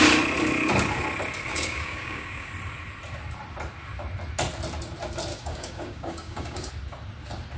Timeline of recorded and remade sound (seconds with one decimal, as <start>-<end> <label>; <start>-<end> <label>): 0.0-1.5 recorded; 1.5-2.5 remade; 2.5-5.3 recorded; 5.3-6.7 remade; 6.7-7.6 recorded